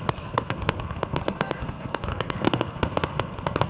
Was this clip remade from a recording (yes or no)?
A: yes